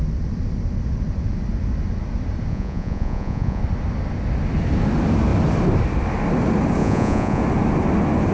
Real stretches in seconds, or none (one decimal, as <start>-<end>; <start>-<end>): 0.0-2.5; 3.6-6.8; 7.4-8.3